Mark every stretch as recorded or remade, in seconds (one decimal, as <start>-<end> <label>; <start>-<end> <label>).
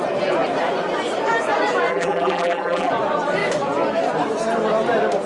0.0-1.9 recorded; 1.9-2.9 remade; 2.9-5.3 recorded